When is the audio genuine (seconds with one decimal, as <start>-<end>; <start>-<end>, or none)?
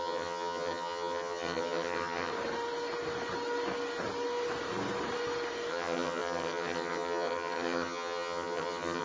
2.3-5.7